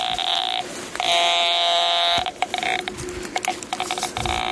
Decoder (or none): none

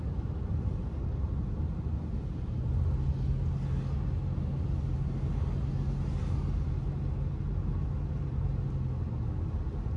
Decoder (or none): none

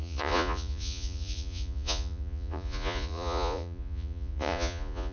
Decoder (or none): vocoder, Vocos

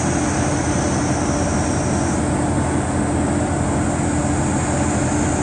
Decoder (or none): none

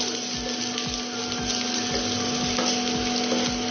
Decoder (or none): none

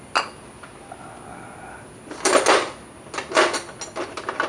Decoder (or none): none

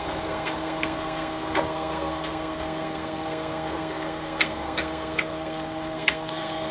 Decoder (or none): codec, SNAC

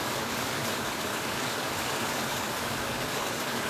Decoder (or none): codec, DAC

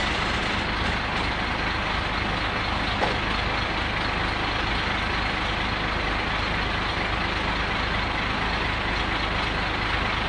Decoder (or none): none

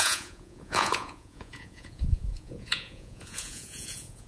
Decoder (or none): vocoder, Vocos